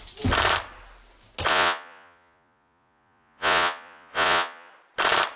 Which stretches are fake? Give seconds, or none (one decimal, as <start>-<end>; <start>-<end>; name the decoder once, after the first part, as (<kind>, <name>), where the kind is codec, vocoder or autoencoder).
1.5-4.7 (vocoder, Vocos)